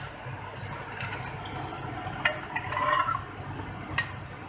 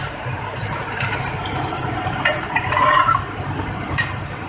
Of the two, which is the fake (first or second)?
second